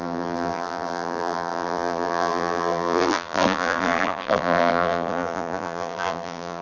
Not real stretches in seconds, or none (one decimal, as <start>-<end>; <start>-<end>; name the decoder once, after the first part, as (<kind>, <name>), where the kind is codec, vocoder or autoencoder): 0.0-6.6 (vocoder, BigVGAN v2)